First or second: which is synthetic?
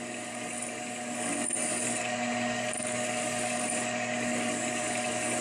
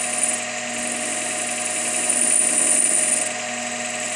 first